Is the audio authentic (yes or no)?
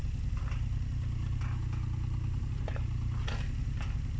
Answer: yes